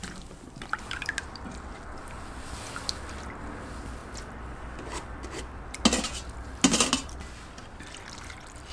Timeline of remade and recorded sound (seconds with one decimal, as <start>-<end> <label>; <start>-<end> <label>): 0.0-8.7 recorded